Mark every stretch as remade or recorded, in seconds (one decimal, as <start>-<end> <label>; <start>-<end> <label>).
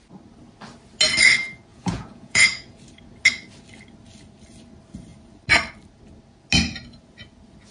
0.0-1.7 recorded; 1.7-2.8 remade; 2.8-7.7 recorded